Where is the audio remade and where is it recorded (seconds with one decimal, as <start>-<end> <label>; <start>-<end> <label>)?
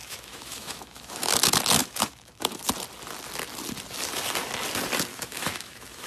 0.0-1.3 remade; 1.3-1.8 recorded; 1.8-2.6 remade; 2.6-5.1 recorded; 5.1-6.1 remade